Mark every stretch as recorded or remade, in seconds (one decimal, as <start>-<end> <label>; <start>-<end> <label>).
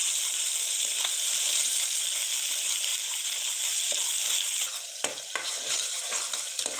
0.0-6.8 recorded